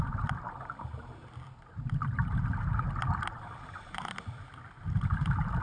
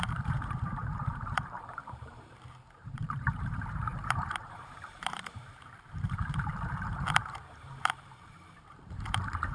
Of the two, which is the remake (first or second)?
second